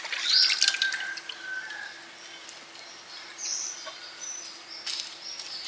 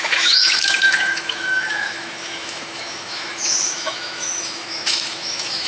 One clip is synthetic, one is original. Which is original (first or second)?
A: first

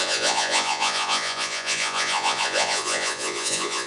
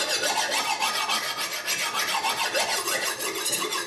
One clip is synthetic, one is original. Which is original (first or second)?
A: second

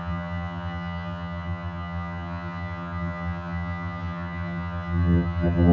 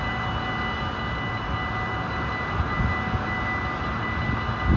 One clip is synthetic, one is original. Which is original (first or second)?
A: second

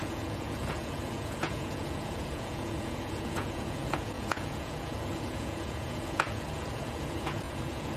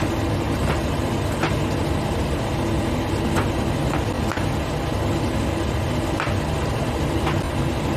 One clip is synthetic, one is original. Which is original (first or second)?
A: second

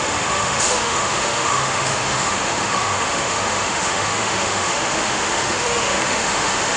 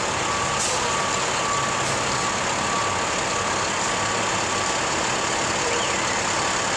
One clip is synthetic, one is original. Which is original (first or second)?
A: second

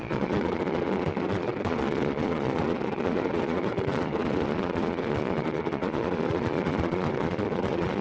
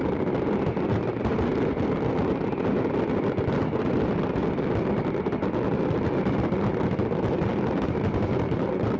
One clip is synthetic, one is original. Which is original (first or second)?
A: second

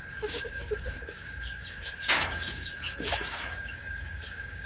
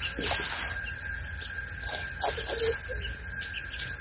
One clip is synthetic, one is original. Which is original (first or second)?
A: second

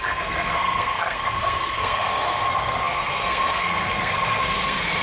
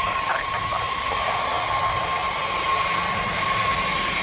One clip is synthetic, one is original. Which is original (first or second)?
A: second